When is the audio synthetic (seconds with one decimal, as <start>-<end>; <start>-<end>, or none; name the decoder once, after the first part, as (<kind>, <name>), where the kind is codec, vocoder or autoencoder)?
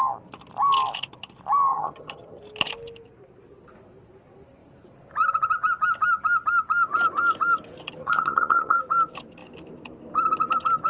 1.7-2.4 (vocoder, HiFi-GAN); 8.0-8.8